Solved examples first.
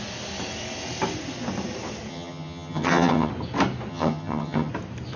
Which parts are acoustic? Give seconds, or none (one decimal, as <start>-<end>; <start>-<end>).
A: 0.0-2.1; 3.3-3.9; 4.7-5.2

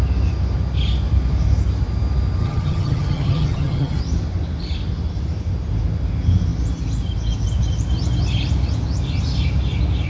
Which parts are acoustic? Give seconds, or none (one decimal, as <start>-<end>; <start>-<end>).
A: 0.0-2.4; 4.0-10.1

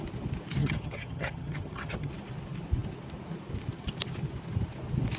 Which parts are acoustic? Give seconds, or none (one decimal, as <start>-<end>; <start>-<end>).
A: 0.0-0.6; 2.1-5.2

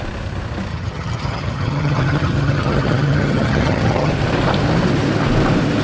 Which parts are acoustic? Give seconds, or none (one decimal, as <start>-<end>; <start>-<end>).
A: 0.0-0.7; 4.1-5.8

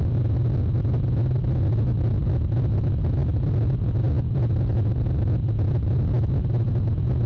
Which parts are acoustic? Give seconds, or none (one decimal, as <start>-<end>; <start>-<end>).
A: 0.0-7.3

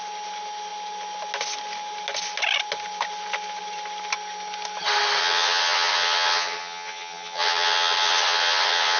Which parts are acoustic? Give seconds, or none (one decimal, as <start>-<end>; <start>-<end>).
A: 0.0-5.2